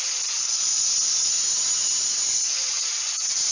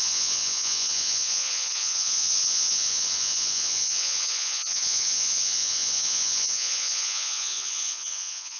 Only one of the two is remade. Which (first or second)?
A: second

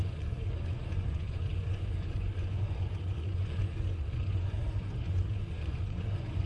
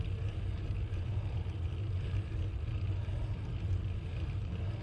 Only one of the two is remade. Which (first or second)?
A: first